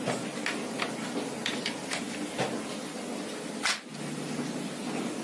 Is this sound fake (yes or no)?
no